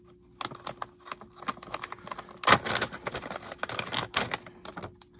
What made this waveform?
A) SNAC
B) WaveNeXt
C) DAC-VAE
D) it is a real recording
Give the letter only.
D